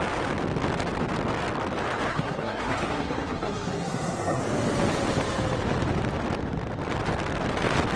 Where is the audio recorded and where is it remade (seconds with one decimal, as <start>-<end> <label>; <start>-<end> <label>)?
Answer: 0.0-2.1 recorded; 2.1-4.4 remade; 4.4-8.0 recorded